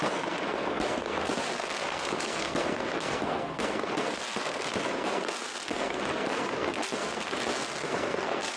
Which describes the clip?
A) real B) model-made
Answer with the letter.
B